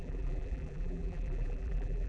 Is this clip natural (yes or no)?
no